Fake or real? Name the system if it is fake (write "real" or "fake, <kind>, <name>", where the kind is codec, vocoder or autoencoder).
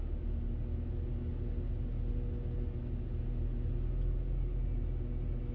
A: real